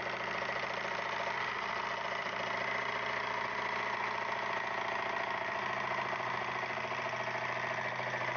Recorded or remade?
recorded